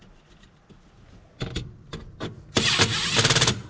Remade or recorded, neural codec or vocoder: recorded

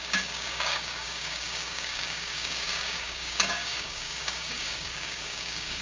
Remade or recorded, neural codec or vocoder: remade, codec, DAC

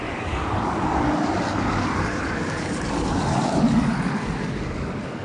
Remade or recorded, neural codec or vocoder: remade, codec, DAC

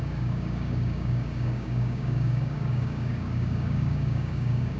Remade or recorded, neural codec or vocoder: remade, codec, DAC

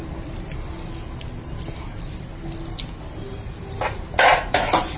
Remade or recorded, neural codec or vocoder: recorded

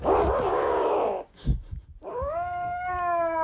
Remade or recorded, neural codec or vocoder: remade, codec, DAC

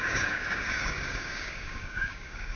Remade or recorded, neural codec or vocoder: remade, codec, DAC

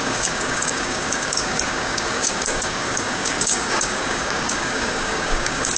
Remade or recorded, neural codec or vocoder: remade, codec, DAC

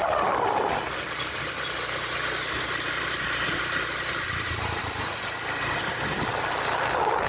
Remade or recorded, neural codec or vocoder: recorded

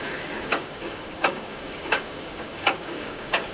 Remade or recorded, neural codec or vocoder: remade, codec, DAC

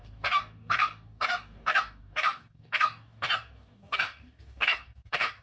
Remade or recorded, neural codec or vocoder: remade, codec, DAC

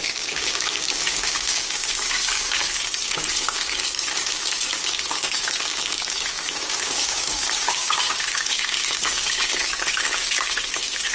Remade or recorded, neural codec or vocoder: remade, codec, DAC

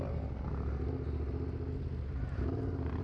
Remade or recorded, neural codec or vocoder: recorded